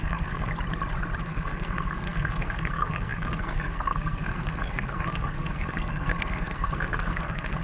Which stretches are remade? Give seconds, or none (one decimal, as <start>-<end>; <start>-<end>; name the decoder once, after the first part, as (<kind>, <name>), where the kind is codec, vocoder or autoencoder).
0.0-0.5 (codec, SNAC); 1.2-7.6